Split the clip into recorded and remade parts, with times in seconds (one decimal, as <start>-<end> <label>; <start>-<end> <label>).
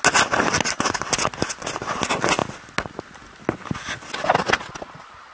0.0-5.3 recorded